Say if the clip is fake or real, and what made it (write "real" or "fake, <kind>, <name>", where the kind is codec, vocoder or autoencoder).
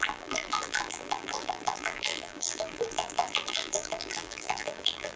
fake, vocoder, BigVGAN v2